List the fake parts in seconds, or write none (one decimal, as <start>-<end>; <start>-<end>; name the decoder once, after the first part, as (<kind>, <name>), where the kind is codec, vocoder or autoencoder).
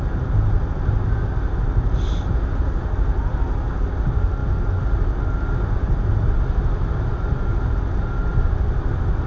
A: none